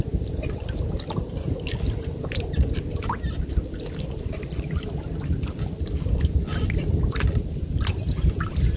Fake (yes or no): no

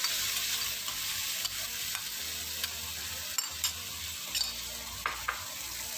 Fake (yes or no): no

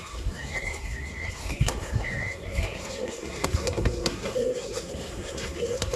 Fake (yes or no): yes